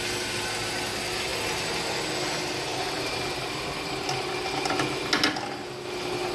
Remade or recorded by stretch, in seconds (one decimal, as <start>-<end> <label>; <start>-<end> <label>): 0.0-6.3 recorded